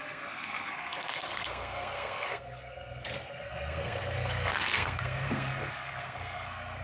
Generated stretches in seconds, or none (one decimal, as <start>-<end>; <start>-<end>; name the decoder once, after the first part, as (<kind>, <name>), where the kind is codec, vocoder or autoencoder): 0.0-6.8 (codec, SNAC)